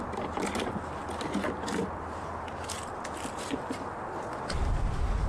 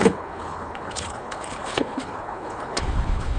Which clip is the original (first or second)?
first